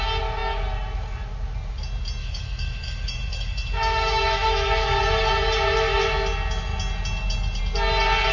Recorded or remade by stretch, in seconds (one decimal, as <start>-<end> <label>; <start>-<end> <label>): 0.0-2.2 recorded; 2.2-5.0 remade; 5.0-8.3 recorded